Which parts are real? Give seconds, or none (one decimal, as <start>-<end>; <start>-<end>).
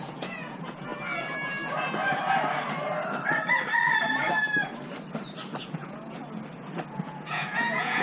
0.9-5.6; 6.2-6.9